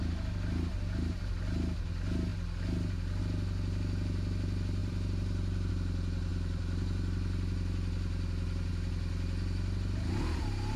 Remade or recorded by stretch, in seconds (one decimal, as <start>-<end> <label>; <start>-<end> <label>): 0.0-4.8 recorded; 4.8-5.7 remade; 5.7-10.8 recorded